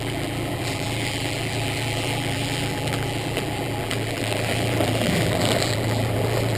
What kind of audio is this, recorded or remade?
remade